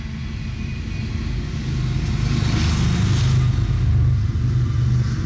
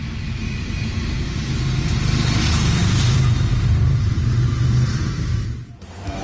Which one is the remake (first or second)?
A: second